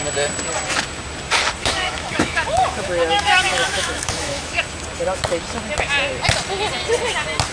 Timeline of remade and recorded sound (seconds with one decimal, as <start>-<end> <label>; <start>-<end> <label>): 0.0-1.6 recorded; 1.6-4.6 remade; 4.6-7.5 recorded